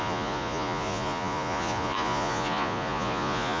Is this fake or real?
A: fake